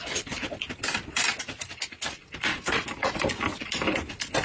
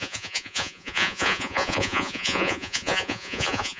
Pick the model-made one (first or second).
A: second